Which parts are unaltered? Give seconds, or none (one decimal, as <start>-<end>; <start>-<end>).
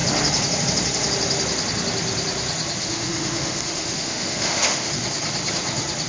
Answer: 0.0-2.8; 4.9-6.1